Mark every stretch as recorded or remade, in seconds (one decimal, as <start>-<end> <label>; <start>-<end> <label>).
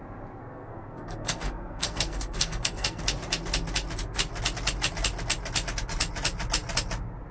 0.0-0.4 recorded; 0.4-3.0 remade; 3.0-7.3 recorded